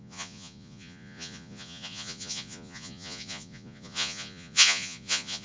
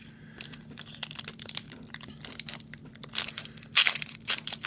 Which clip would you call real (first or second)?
second